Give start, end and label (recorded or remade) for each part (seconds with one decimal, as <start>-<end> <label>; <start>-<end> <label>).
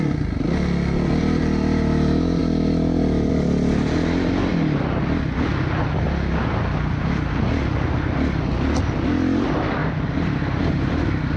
0.0-11.4 recorded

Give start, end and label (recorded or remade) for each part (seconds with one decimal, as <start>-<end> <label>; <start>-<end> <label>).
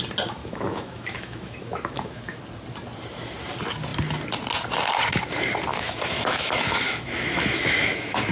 0.0-0.4 recorded; 0.4-2.4 remade; 2.4-5.7 recorded; 5.7-8.3 remade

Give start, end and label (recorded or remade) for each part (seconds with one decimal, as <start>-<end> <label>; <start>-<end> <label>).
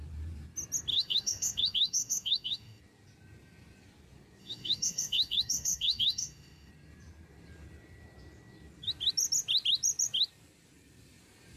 0.0-0.9 recorded; 0.9-2.8 remade; 2.8-4.4 recorded; 4.4-6.7 remade; 6.7-11.6 recorded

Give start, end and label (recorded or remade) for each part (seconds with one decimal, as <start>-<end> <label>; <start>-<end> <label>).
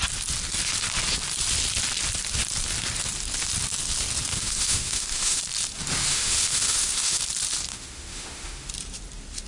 0.0-4.3 recorded; 4.3-5.4 remade; 5.4-6.1 recorded; 6.1-7.2 remade; 7.2-7.7 recorded; 7.7-8.7 remade; 8.7-9.5 recorded